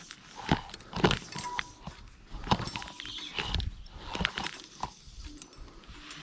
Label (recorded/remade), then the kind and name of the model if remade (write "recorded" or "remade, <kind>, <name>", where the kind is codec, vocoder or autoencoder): recorded